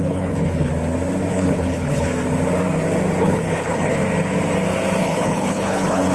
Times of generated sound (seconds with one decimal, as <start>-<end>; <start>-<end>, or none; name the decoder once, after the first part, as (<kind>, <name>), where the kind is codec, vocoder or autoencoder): 0.0-0.7 (codec, HILCodec); 1.3-2.1; 3.2-4.0; 5.0-6.1

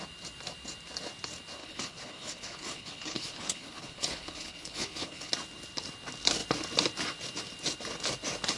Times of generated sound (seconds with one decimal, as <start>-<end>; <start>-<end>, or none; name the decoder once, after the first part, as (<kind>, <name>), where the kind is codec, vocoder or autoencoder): 1.6-5.3 (codec, HILCodec)

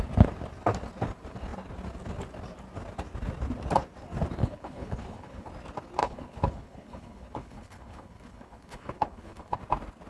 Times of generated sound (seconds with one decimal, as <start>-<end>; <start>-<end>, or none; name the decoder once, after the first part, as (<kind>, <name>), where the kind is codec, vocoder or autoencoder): 4.4-5.5 (codec, HILCodec); 6.0-9.6

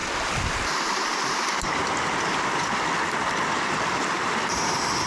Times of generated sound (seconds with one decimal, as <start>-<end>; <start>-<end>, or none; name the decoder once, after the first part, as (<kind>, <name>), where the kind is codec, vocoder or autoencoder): none

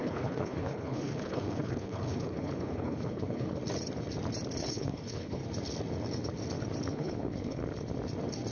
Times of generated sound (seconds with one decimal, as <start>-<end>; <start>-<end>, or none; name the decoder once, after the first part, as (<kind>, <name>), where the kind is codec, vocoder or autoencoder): 0.0-3.6 (codec, HILCodec); 4.7-5.4; 6.9-7.6

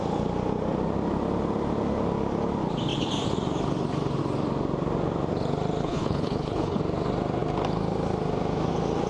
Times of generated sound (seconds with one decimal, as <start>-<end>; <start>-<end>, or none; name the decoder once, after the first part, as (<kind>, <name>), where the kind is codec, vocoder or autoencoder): 5.8-6.8 (codec, HILCodec)

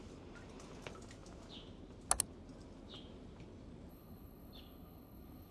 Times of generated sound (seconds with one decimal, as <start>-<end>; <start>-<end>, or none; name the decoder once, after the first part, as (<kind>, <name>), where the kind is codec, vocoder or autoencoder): 3.9-5.5 (codec, HILCodec)